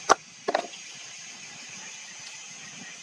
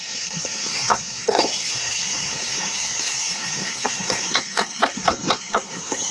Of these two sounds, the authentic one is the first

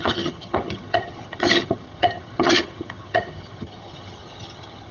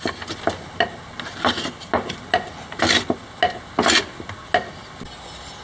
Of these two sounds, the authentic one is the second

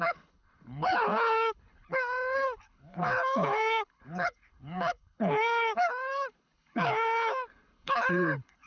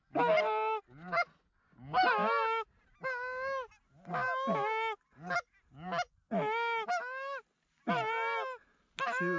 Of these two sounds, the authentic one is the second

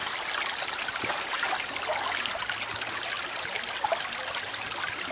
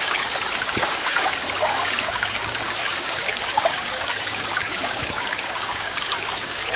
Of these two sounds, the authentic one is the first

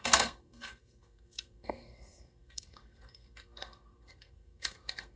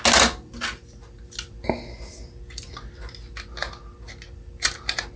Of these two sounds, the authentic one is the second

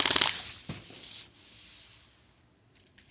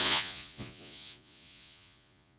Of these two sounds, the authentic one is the first